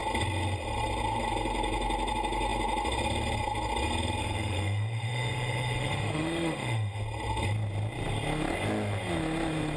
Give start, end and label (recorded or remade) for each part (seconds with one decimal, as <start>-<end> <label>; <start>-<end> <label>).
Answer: 0.0-4.2 recorded; 4.2-7.0 remade; 7.0-9.8 recorded